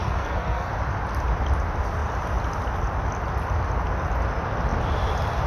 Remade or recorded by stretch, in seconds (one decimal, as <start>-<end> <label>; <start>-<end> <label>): 0.0-0.7 remade; 0.7-5.5 recorded